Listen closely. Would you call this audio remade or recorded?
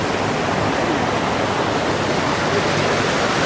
recorded